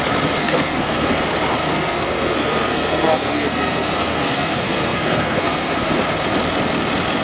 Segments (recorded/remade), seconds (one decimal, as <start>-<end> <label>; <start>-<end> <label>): 0.0-0.4 recorded; 0.4-1.1 remade; 1.1-1.6 recorded; 1.6-5.9 remade; 5.9-7.2 recorded